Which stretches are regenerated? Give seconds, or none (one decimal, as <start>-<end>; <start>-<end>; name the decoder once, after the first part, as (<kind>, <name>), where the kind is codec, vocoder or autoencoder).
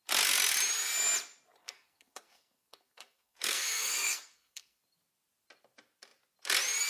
1.6-4.8 (codec, SNAC)